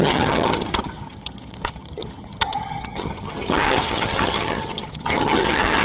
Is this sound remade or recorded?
remade